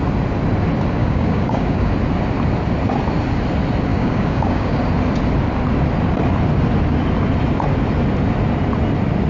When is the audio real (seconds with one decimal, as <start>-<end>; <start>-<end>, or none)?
0.0-1.0; 1.9-3.9; 4.8-9.3